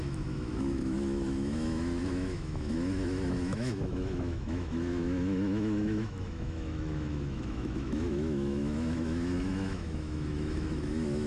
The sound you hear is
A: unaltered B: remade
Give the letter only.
B